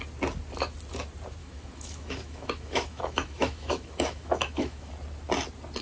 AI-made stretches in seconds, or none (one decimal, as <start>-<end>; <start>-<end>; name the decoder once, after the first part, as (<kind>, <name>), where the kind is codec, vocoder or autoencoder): 1.4-4.9 (autoencoder, DAC-VAE)

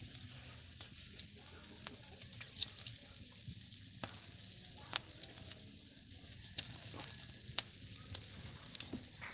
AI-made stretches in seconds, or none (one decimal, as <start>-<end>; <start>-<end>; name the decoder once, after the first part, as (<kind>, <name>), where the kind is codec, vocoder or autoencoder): none

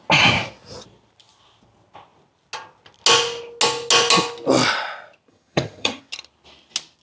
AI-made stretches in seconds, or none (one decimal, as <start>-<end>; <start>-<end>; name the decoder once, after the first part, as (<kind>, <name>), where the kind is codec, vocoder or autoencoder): 5.3-6.0 (vocoder, HiFi-GAN)

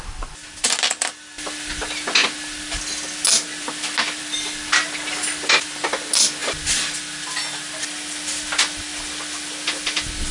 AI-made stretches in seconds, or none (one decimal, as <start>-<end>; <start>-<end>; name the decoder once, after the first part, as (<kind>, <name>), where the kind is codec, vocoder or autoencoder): none